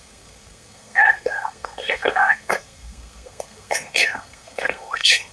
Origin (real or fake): fake